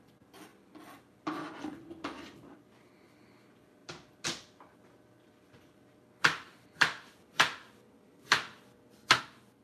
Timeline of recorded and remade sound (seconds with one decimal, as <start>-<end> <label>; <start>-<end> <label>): 0.0-9.6 recorded